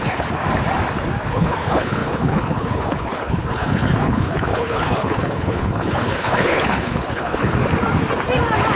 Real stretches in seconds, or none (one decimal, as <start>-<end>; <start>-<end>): 0.4-1.3; 7.6-8.8